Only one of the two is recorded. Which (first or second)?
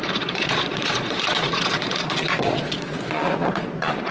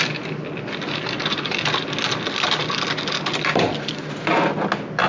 second